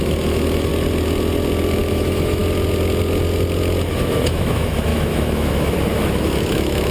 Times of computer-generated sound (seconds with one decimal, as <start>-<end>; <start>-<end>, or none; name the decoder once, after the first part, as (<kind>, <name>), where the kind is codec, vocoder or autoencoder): 0.0-0.7 (autoencoder, DAC-VAE); 1.8-2.4; 3.9-6.9